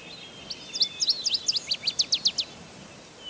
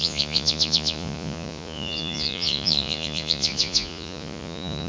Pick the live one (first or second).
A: first